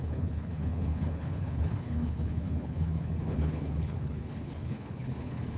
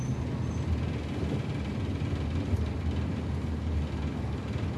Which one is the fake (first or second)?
first